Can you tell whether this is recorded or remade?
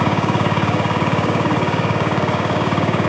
remade